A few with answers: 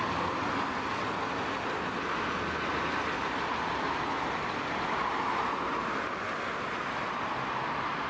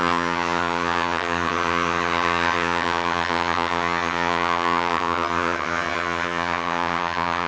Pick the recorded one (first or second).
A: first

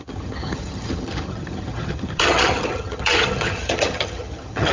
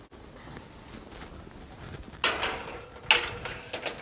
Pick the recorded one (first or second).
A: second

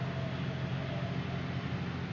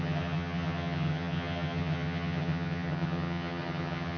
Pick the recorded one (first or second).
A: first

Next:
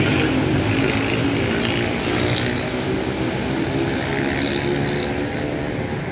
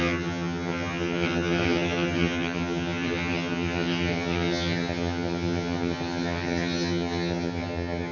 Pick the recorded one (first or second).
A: first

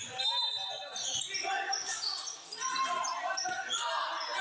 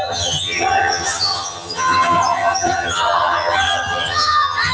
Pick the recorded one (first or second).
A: first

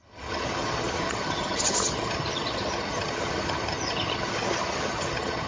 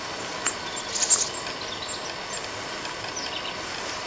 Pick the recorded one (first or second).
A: second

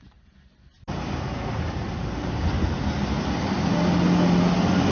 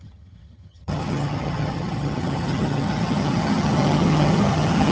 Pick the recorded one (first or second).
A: first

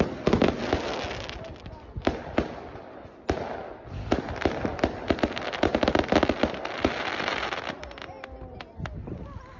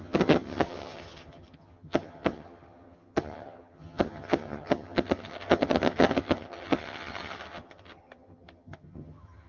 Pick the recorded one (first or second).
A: first